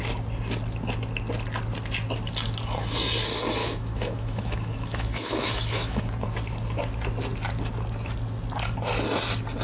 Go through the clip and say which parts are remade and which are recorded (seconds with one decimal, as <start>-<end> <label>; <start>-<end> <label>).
0.0-3.6 recorded; 3.6-6.0 remade; 6.0-9.6 recorded